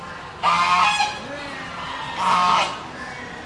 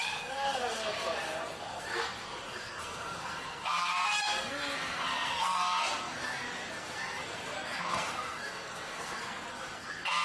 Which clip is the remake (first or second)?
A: second